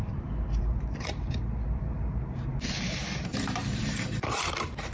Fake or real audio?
fake